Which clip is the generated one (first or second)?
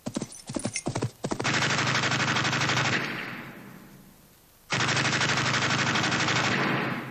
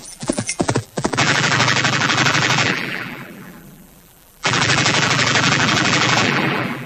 second